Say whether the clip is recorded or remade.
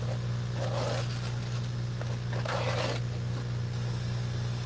recorded